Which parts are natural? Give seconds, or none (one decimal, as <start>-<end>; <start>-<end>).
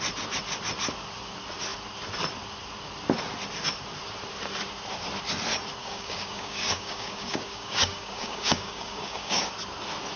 0.0-5.8; 9.5-10.2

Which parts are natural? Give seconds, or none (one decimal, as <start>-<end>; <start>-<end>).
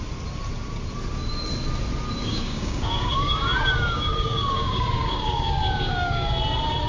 0.0-2.2; 6.3-6.9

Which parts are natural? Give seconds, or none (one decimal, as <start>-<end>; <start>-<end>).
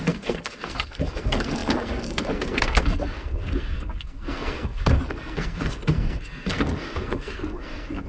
none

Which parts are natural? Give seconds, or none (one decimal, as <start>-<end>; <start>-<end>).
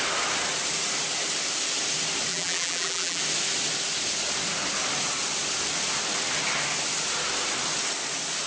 0.0-2.3; 3.2-8.5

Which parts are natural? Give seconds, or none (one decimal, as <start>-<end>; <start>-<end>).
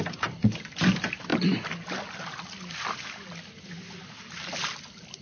0.0-5.2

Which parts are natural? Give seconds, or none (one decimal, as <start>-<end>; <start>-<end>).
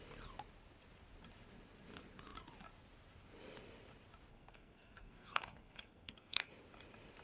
0.0-4.3; 6.5-7.2